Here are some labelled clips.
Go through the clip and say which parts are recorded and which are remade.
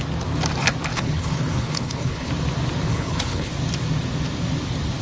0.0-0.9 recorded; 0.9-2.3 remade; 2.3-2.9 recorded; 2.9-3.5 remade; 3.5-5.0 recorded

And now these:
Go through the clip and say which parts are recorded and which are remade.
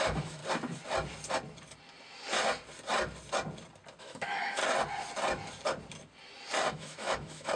0.0-0.4 remade; 0.4-4.0 recorded; 4.0-4.6 remade; 4.6-6.7 recorded; 6.7-7.6 remade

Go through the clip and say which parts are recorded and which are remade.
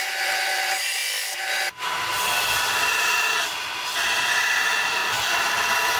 0.0-1.0 remade; 1.0-4.6 recorded; 4.6-5.0 remade; 5.0-6.0 recorded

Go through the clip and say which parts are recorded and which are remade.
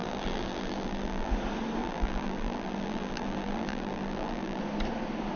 0.0-1.3 remade; 1.3-1.8 recorded; 1.8-4.6 remade; 4.6-5.4 recorded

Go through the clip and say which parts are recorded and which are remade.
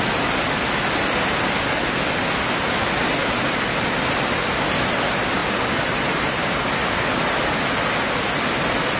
0.0-5.4 recorded; 5.4-6.2 remade; 6.2-9.0 recorded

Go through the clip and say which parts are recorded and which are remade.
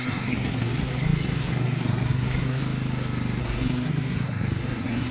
0.0-2.6 remade; 2.6-3.4 recorded; 3.4-5.1 remade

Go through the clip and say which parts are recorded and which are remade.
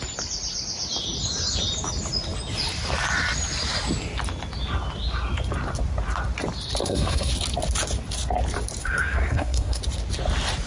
0.0-6.8 recorded; 6.8-7.3 remade; 7.3-8.8 recorded; 8.8-9.8 remade; 9.8-10.7 recorded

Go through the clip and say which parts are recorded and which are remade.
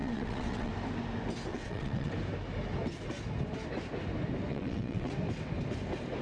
0.0-0.7 remade; 0.7-1.5 recorded; 1.5-2.1 remade; 2.1-4.5 recorded; 4.5-5.1 remade; 5.1-6.2 recorded